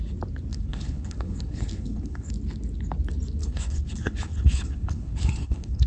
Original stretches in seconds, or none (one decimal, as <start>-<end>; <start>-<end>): 0.0-0.5; 2.3-3.4